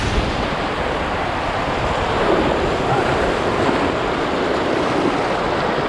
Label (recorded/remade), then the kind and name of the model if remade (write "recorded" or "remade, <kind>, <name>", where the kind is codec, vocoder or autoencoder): recorded